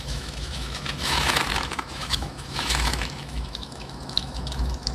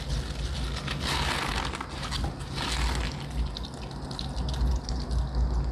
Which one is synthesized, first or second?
first